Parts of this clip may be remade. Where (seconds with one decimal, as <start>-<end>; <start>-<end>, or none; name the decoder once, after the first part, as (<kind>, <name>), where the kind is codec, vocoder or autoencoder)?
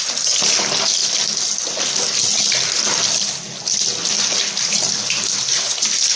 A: none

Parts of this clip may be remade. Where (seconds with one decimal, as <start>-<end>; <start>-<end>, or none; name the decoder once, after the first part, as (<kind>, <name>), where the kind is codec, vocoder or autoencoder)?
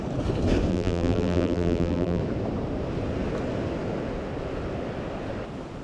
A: 0.7-2.2 (vocoder, BigVGAN v2)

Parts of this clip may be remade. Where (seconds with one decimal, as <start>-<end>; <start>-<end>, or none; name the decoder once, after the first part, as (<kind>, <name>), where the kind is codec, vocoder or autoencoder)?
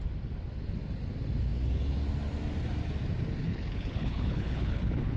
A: 3.4-5.2 (codec, HILCodec)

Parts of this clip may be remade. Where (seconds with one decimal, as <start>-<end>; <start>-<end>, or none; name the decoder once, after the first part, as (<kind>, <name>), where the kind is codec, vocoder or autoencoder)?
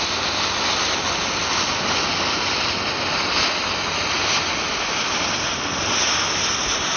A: none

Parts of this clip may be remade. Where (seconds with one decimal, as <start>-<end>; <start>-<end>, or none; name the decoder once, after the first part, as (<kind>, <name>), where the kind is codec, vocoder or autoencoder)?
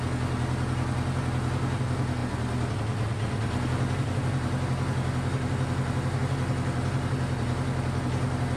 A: none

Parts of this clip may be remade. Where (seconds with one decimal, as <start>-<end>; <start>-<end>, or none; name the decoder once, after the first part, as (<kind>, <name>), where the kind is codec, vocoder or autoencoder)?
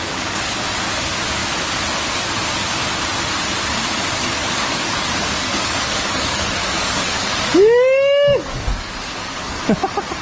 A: 0.0-0.6 (codec, DAC); 4.4-9.6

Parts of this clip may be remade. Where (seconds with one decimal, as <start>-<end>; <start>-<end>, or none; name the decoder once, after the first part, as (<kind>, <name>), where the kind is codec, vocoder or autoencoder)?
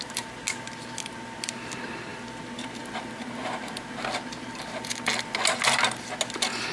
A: none